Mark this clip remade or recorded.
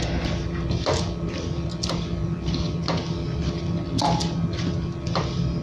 recorded